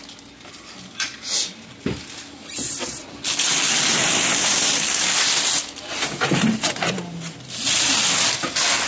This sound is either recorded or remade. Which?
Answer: recorded